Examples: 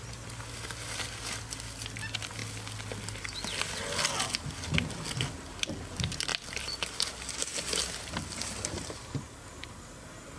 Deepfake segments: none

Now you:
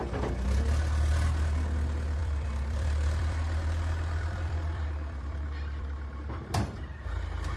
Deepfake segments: 2.2-6.8 (vocoder, BigVGAN v2)

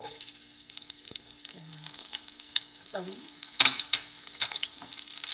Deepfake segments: 0.0-5.3 (codec, SNAC)

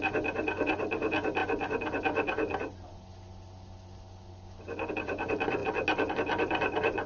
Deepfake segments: none

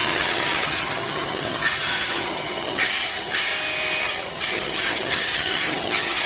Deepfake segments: 0.0-3.5 (vocoder, HiFi-GAN); 4.0-6.3